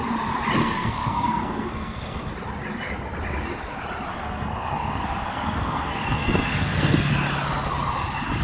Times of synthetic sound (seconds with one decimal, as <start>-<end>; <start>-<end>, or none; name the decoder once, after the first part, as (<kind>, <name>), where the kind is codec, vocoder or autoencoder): 0.6-2.3 (codec, SNAC); 4.1-7.1